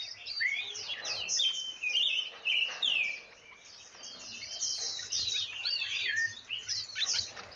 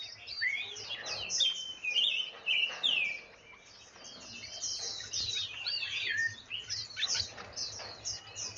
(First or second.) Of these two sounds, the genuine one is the second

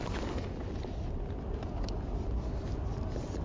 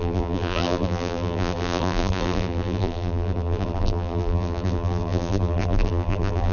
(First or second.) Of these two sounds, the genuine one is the first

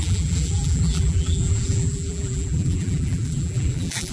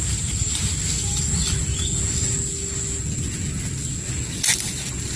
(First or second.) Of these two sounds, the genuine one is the second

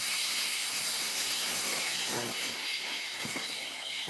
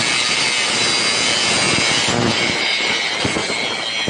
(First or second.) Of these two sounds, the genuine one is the second